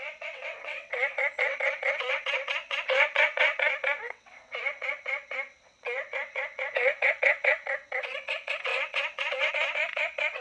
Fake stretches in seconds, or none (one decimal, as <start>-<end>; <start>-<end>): 0.0-10.4